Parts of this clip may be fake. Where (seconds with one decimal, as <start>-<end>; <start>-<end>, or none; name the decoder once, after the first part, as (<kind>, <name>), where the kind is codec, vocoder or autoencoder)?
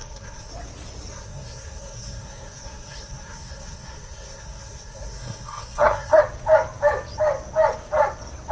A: 0.0-0.5 (codec, SNAC); 1.1-6.2